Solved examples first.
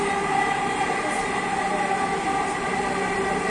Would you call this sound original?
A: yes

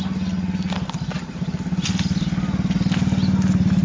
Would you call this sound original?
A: yes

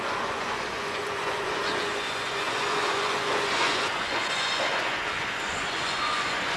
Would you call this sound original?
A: no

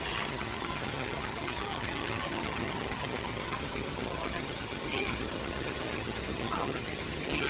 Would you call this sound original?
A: no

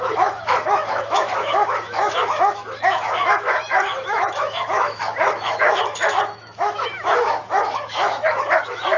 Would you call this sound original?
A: no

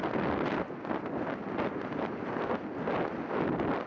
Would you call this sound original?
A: yes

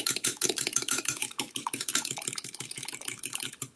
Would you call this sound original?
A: no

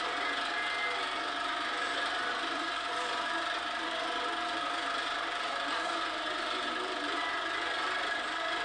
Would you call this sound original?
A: yes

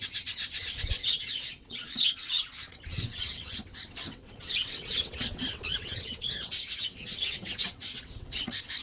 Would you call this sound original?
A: no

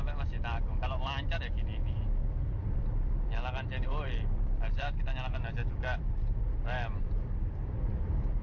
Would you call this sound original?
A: no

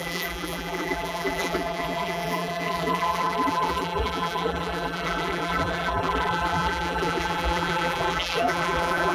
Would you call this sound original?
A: no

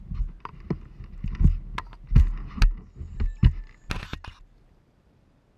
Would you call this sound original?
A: yes